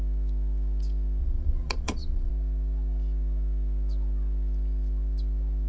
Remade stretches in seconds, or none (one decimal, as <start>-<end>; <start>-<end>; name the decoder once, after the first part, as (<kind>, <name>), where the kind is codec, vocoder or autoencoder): 1.2-2.3 (vocoder, Vocos)